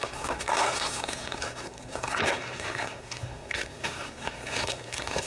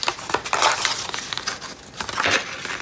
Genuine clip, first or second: second